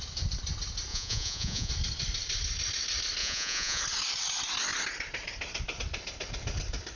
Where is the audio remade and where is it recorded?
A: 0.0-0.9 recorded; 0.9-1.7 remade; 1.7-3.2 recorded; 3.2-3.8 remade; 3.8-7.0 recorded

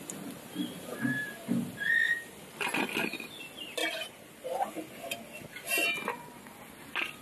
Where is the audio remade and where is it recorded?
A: 0.0-7.2 recorded

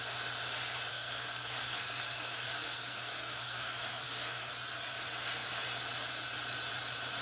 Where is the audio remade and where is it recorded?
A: 0.0-0.9 recorded; 0.9-4.5 remade; 4.5-7.2 recorded